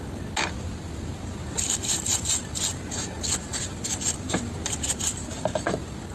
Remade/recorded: recorded